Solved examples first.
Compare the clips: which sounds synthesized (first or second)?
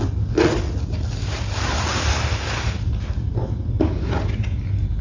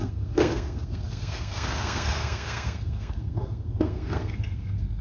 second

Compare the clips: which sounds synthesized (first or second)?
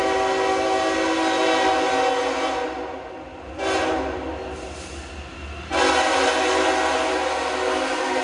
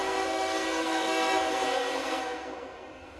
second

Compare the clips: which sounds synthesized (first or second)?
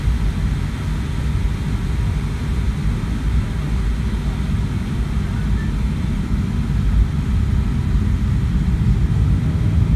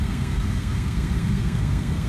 second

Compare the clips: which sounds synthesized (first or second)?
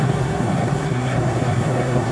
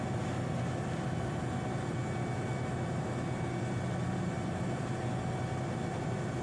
first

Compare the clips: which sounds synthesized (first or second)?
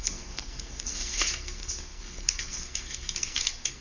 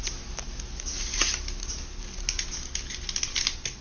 first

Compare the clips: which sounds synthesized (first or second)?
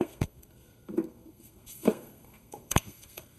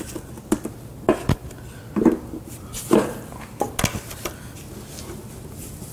first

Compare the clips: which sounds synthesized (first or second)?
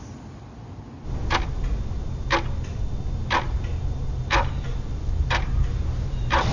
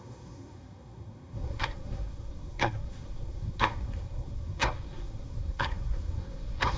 second